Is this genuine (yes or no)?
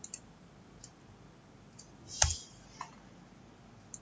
yes